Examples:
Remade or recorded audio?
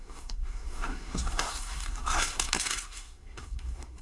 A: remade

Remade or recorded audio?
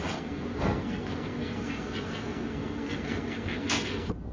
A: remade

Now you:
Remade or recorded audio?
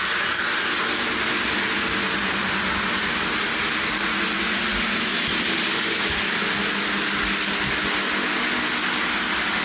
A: recorded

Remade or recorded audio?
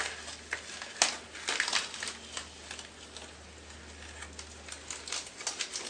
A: recorded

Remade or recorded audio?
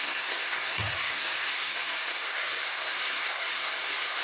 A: remade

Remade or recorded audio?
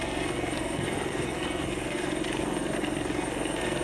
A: remade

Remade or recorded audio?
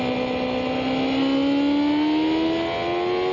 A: recorded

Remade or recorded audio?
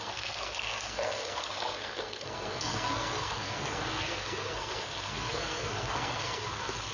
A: remade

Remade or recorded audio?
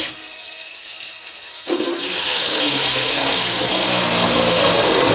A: remade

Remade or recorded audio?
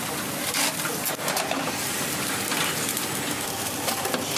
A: recorded